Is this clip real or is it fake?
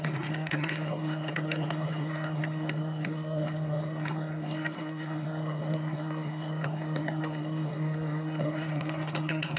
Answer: fake